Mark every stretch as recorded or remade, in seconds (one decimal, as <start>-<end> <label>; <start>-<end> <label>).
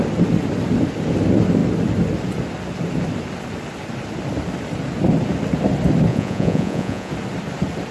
0.0-6.1 recorded; 6.1-7.1 remade; 7.1-7.9 recorded